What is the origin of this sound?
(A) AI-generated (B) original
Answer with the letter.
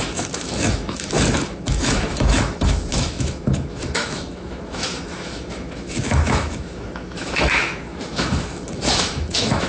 A